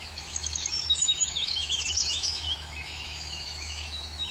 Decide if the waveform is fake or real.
fake